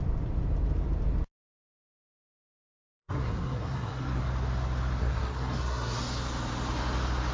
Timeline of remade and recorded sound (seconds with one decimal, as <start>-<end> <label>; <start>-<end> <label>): 0.0-2.6 recorded; 2.6-4.2 remade; 4.2-5.0 recorded; 5.0-6.0 remade; 6.0-7.3 recorded